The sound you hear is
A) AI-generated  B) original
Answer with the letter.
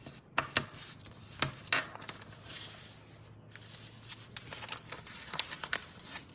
B